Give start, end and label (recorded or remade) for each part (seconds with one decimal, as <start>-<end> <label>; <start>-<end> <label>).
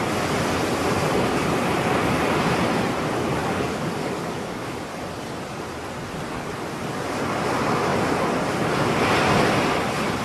0.0-3.4 recorded; 3.4-4.8 remade; 4.8-10.2 recorded